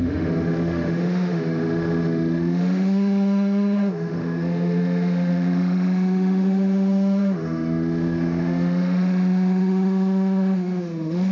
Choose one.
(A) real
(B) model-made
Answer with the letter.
B